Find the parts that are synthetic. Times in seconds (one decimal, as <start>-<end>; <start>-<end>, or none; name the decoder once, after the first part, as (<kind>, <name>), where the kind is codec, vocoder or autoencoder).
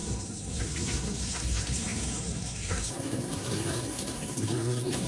0.0-5.1 (codec, SNAC)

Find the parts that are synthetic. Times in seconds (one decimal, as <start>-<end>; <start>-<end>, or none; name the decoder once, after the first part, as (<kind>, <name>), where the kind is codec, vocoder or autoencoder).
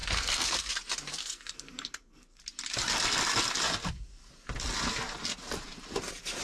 0.0-0.7 (codec, SNAC); 1.2-2.4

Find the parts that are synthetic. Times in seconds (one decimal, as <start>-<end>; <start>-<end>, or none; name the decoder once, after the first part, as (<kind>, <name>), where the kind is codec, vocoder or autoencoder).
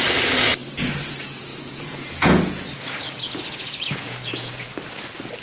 1.5-4.7 (vocoder, Vocos)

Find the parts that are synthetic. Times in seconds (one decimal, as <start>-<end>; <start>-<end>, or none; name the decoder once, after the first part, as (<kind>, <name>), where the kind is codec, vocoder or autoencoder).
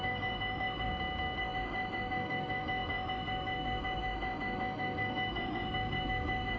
0.0-0.9 (autoencoder, DAC-VAE); 1.4-6.6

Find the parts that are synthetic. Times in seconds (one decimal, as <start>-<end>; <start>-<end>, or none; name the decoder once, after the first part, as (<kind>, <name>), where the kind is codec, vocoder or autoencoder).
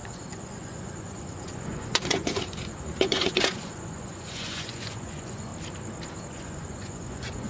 0.0-5.5 (vocoder, Vocos); 6.2-7.5